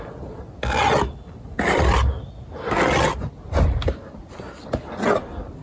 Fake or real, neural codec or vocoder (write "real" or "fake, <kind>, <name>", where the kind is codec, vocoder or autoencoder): real